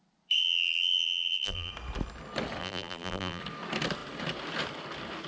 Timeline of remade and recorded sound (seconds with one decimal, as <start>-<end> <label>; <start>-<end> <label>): 0.0-0.4 recorded; 0.4-1.7 remade; 1.7-2.6 recorded; 2.6-3.4 remade; 3.4-5.3 recorded